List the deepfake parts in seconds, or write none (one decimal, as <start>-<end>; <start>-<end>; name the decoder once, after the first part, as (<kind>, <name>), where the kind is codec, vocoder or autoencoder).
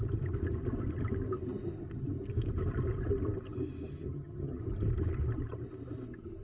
3.9-4.6 (vocoder, HiFi-GAN)